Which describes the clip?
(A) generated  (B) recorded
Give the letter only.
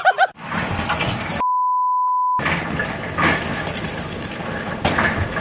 B